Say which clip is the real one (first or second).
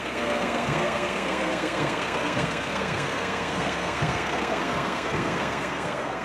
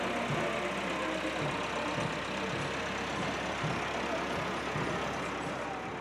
second